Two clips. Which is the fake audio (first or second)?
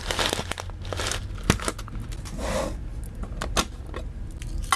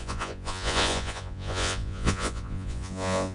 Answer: second